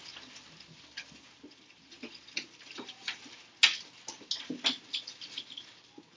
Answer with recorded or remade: recorded